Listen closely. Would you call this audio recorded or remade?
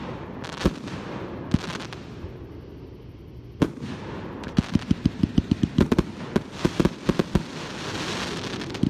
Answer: recorded